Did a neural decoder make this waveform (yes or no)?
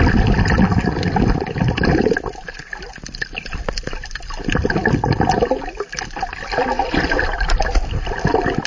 no